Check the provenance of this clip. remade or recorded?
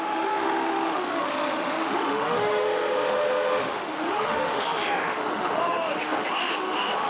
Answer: remade